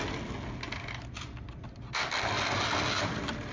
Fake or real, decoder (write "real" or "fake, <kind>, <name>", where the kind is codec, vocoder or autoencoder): real